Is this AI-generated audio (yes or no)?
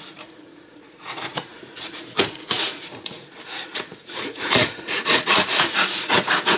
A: yes